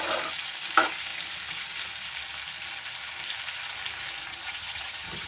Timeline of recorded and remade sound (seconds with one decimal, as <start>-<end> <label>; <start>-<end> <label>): 0.0-4.3 recorded; 4.3-5.3 remade